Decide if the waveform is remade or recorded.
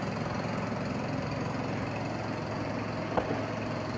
recorded